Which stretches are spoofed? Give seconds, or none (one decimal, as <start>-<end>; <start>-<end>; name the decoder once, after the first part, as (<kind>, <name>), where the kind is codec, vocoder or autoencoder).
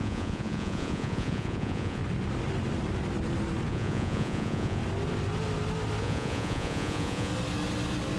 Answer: 0.0-2.0 (vocoder, Vocos); 3.7-4.8; 6.0-7.3